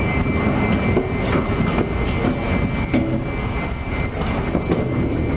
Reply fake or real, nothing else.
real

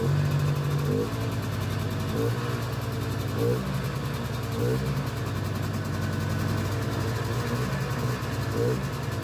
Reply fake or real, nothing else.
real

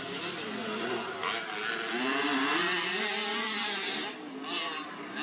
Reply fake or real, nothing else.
real